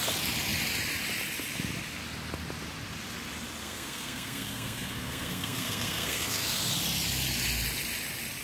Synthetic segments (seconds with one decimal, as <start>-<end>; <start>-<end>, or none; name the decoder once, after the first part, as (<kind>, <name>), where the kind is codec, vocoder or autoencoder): 3.6-6.6 (codec, SNAC)